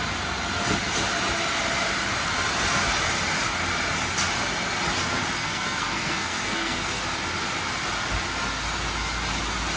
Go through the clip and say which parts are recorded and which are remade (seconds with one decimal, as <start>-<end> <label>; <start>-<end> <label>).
0.0-5.4 recorded; 5.4-7.0 remade; 7.0-9.8 recorded